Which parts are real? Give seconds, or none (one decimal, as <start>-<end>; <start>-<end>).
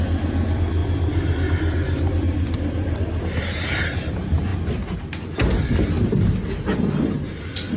0.0-7.8